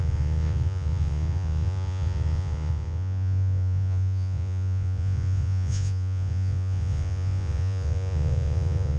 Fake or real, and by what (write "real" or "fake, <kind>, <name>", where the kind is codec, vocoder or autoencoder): fake, vocoder, Vocos